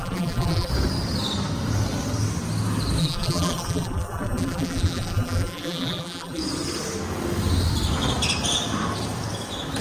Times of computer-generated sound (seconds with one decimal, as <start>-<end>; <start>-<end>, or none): 0.0-0.7; 3.0-6.4